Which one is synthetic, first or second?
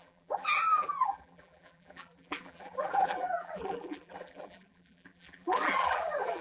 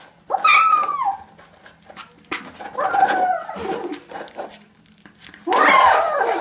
first